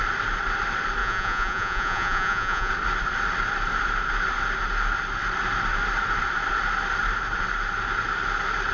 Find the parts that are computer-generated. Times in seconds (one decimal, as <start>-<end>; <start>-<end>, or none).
1.0-2.7